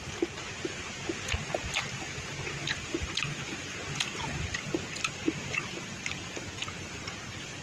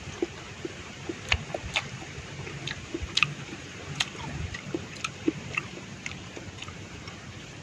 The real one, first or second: first